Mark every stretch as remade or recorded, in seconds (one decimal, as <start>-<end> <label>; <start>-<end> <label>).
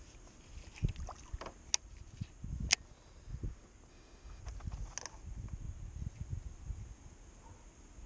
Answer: 0.0-3.9 recorded; 3.9-4.4 remade; 4.4-8.1 recorded